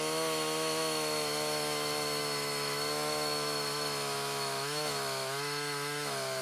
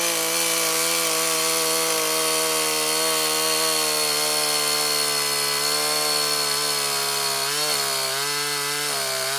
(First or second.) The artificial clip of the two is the first